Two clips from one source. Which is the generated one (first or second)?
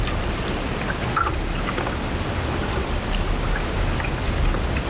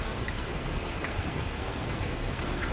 second